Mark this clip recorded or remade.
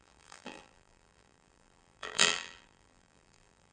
remade